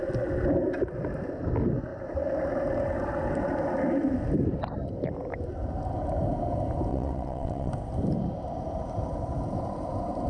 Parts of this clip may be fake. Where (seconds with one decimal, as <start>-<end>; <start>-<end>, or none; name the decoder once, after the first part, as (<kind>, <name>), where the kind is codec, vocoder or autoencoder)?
6.9-7.7 (vocoder, WaveNeXt)